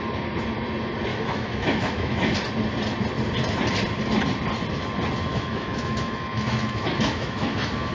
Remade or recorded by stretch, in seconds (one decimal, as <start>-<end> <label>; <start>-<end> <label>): 0.0-1.1 recorded; 1.1-2.3 remade; 2.3-5.3 recorded; 5.3-7.9 remade